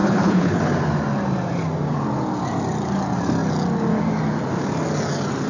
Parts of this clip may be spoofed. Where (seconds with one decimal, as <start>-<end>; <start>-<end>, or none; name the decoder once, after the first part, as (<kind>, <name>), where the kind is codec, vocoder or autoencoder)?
0.0-0.6 (codec, HILCodec)